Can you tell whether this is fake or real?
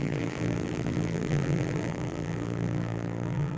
fake